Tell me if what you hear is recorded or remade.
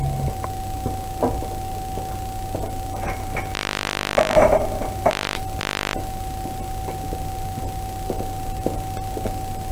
recorded